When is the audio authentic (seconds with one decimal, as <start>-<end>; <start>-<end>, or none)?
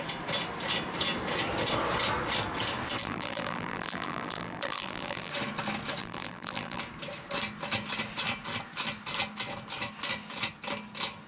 0.0-3.0; 5.3-6.0; 6.8-11.3